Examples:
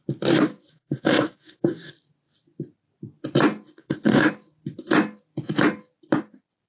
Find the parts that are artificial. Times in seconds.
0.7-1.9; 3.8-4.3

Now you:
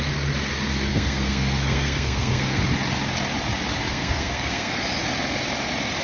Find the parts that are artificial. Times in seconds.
0.9-2.6; 3.9-4.8

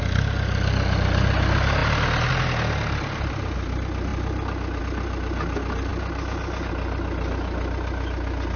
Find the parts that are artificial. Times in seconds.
none

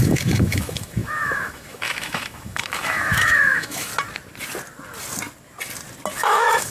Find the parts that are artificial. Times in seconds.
0.0-3.9; 6.2-6.7

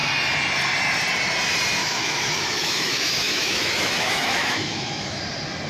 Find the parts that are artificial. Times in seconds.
1.8-5.2

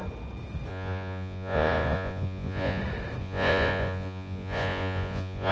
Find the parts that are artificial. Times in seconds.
0.7-2.8; 3.2-5.5

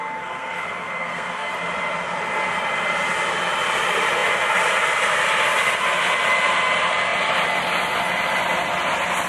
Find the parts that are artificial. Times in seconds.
0.0-1.5